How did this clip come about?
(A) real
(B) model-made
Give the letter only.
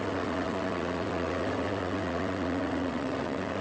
B